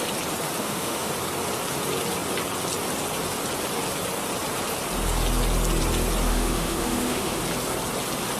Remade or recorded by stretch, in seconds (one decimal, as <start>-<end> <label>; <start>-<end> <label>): 0.0-0.6 recorded; 0.6-1.1 remade; 1.1-6.3 recorded; 6.3-7.4 remade; 7.4-8.4 recorded